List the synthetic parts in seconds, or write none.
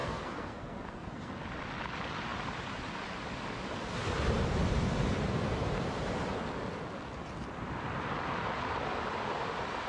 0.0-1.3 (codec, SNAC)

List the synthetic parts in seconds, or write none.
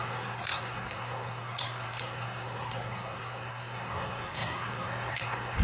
0.0-5.6 (codec, SNAC)